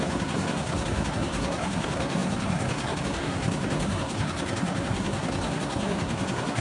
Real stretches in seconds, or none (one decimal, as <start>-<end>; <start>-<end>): none